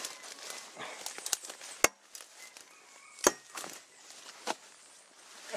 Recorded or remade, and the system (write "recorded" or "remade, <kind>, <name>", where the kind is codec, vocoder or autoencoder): recorded